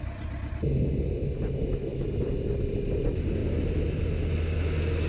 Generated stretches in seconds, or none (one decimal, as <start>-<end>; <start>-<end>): none